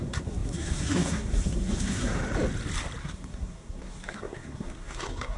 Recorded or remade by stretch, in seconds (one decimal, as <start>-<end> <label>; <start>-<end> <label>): 0.0-2.2 remade; 2.2-3.0 recorded; 3.0-5.4 remade